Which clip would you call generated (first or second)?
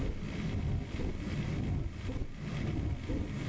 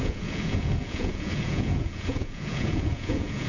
second